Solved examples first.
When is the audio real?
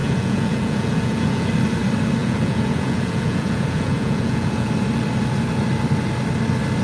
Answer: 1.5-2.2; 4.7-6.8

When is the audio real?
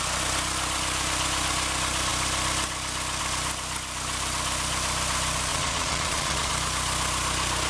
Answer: 0.0-5.5; 6.5-7.7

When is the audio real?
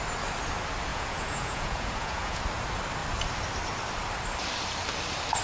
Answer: 0.0-0.9; 2.4-5.4